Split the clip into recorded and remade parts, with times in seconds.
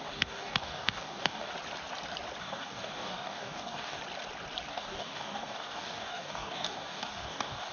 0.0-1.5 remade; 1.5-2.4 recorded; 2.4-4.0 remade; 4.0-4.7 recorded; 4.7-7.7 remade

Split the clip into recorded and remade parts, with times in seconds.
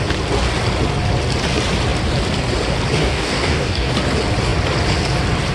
0.0-3.0 recorded; 3.0-3.9 remade; 3.9-5.5 recorded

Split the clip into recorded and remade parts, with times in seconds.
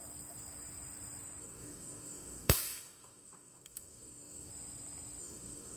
0.0-1.4 recorded; 1.4-4.5 remade; 4.5-5.2 recorded; 5.2-5.8 remade